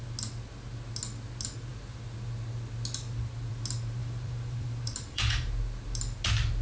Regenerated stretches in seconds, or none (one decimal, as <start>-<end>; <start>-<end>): 4.0-5.5